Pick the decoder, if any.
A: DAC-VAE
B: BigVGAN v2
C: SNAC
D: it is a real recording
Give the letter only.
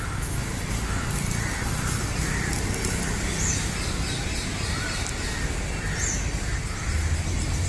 D